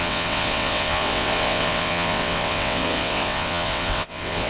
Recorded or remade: remade